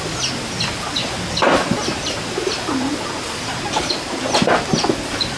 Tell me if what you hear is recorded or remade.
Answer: recorded